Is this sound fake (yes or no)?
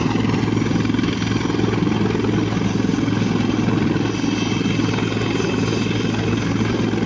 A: no